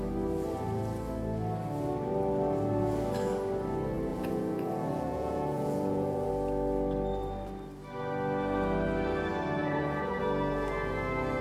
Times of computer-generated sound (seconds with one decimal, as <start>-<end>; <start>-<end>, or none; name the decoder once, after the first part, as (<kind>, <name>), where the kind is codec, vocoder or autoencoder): 4.1-6.3 (vocoder, Vocos); 9.6-10.2